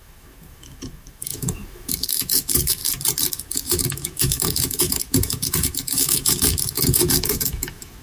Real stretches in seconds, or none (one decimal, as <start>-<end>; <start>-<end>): 2.8-3.3